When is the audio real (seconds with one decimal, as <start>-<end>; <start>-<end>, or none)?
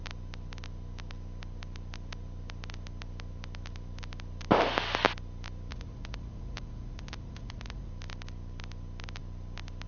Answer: 0.0-5.7; 7.9-9.9